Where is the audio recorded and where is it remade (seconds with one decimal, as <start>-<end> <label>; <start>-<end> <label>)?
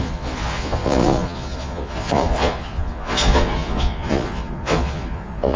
0.0-5.6 remade